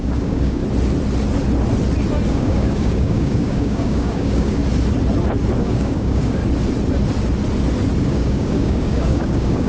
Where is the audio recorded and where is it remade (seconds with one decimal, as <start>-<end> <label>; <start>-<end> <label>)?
0.0-0.6 remade; 0.6-2.3 recorded; 2.3-4.6 remade; 4.6-5.6 recorded; 5.6-6.4 remade; 6.4-8.0 recorded; 8.0-9.7 remade

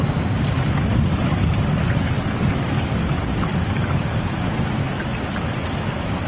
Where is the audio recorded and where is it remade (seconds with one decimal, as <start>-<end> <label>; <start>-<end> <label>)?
0.0-1.1 recorded; 1.1-3.1 remade; 3.1-3.5 recorded; 3.5-4.4 remade; 4.4-6.3 recorded

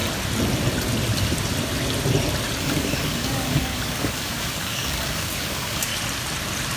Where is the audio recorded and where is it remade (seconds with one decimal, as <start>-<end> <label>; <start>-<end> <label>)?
0.0-2.6 recorded; 2.6-5.9 remade; 5.9-6.8 recorded

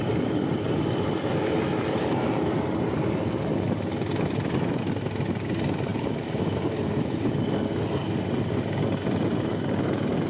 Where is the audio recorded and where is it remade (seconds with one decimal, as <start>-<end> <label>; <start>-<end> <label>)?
0.0-10.3 recorded

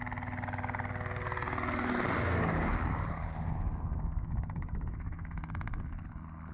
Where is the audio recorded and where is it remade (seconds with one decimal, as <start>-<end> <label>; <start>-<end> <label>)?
0.0-2.2 recorded; 2.2-5.5 remade; 5.5-6.5 recorded